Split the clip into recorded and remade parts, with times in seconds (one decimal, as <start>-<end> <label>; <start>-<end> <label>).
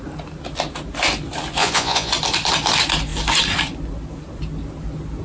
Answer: 0.0-1.6 recorded; 1.6-2.1 remade; 2.1-5.2 recorded